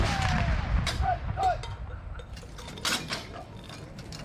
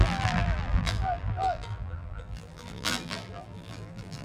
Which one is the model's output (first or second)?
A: second